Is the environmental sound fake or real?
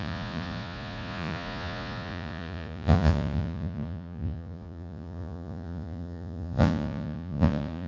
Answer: fake